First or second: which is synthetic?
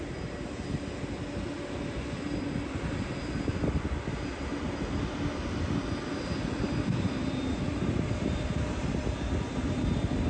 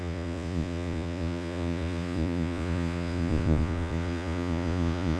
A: second